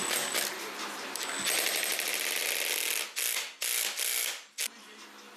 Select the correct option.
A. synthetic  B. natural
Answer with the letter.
B